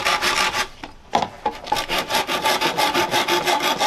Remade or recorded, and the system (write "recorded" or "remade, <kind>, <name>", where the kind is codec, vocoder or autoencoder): recorded